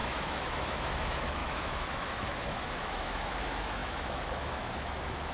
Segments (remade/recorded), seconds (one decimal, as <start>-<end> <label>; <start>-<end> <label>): 0.0-5.3 remade